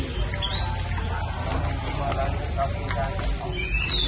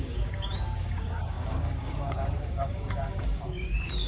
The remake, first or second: second